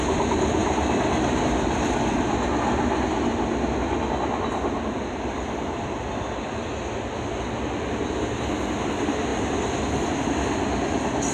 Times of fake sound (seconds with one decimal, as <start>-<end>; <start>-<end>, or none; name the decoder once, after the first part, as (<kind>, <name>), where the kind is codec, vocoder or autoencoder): none